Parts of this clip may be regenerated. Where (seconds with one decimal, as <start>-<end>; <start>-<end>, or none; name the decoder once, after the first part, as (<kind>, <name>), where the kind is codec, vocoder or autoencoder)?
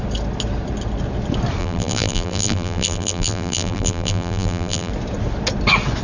1.6-4.9 (vocoder, BigVGAN v2)